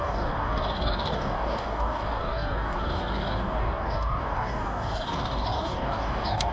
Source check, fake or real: fake